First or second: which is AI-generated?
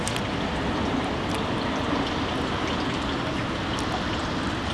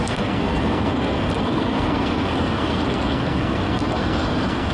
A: second